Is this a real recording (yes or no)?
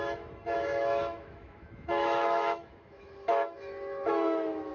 no